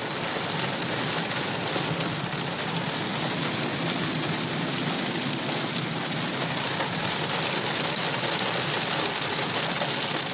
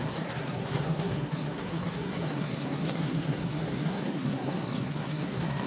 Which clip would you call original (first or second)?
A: first